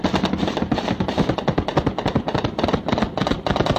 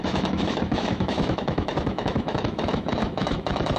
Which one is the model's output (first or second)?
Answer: second